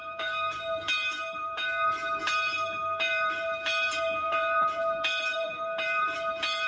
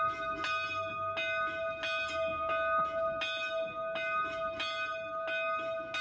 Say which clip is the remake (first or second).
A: first